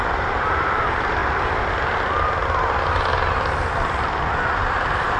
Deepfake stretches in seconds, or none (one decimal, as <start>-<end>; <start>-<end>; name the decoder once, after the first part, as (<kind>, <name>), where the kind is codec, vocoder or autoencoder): 0.0-1.2 (vocoder, BigVGAN v2); 4.3-5.2